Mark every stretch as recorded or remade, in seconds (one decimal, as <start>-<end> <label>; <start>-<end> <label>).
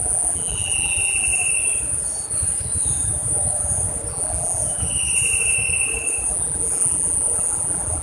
0.0-1.3 remade; 1.3-4.1 recorded; 4.1-4.6 remade; 4.6-6.3 recorded; 6.3-8.0 remade